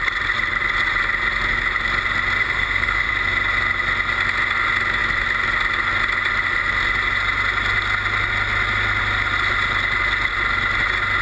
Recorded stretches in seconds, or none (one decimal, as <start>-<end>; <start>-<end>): 0.0-2.4; 3.1-11.2